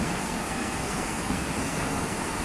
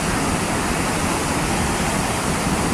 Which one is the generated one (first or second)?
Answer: first